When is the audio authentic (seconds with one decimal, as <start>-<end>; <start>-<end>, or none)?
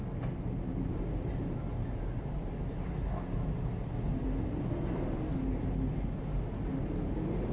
0.0-7.5